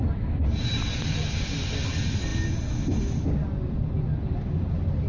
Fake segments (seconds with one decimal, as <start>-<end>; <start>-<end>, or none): none